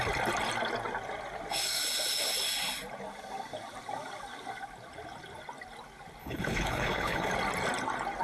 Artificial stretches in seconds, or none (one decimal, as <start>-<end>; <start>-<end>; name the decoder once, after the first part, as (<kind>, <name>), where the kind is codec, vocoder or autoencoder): 6.2-7.3 (codec, HILCodec)